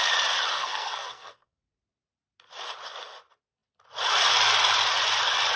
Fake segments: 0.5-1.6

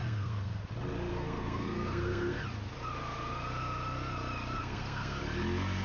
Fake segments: 0.0-0.6; 1.1-2.4; 4.6-5.2

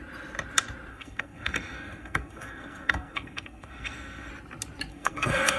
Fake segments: 0.9-4.3; 4.9-5.6

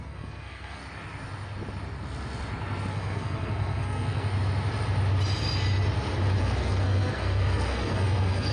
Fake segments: 0.0-0.8; 2.9-4.3; 6.4-8.5

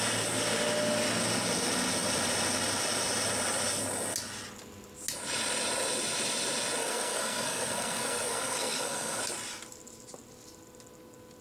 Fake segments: 6.8-9.2

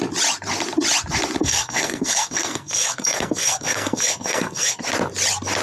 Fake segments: 1.4-4.8